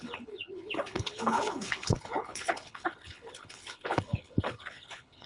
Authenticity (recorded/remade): remade